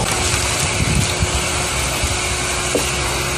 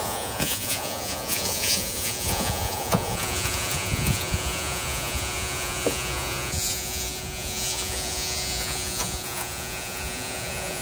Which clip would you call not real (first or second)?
second